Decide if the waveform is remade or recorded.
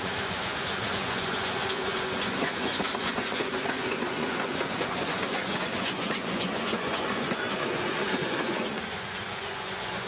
remade